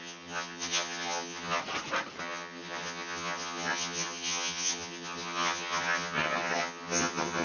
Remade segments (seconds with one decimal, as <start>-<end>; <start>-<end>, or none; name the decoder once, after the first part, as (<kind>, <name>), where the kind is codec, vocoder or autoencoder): 0.0-1.6 (vocoder, HiFi-GAN); 2.2-7.4